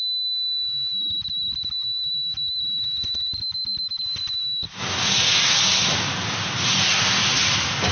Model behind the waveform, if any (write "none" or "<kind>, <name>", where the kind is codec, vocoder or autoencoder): none